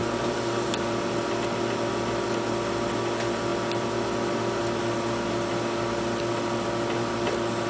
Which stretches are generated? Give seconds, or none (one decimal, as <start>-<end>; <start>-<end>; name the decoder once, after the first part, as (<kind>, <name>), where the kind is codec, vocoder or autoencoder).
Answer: 0.0-0.7 (vocoder, BigVGAN v2)